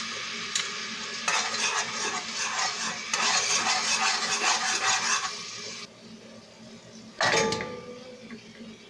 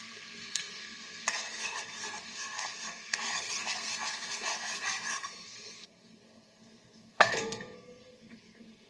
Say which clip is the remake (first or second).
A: second